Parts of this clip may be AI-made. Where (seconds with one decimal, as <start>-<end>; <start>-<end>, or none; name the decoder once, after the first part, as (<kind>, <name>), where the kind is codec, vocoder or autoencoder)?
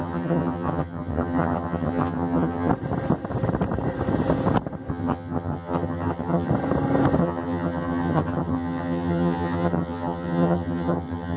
0.0-2.7 (vocoder, HiFi-GAN); 4.9-6.5; 7.2-11.4